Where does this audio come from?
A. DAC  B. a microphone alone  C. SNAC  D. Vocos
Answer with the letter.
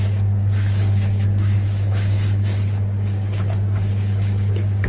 A